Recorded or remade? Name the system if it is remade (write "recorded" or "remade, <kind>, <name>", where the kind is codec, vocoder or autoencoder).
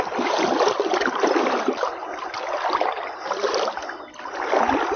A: recorded